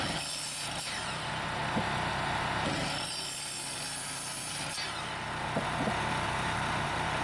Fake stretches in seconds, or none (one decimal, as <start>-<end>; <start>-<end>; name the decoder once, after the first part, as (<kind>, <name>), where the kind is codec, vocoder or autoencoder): none